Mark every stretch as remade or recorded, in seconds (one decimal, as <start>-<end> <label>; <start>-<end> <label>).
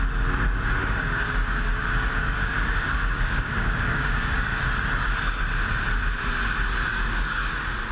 0.0-0.8 recorded; 0.8-4.6 remade; 4.6-6.9 recorded; 6.9-7.5 remade; 7.5-7.9 recorded